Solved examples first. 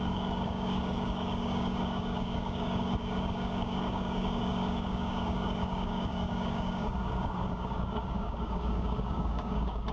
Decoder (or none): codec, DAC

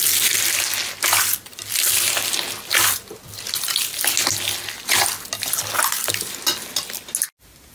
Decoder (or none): none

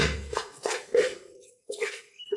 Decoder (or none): codec, SNAC